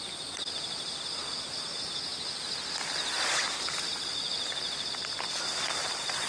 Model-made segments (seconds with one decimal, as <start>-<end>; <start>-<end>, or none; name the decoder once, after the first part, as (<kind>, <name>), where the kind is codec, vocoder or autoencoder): none